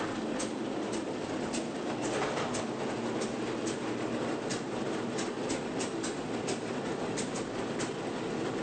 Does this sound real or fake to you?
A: real